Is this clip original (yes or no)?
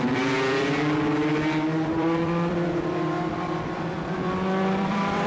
no